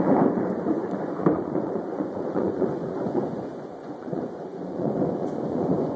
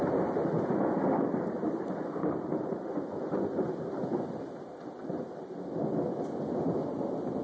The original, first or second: second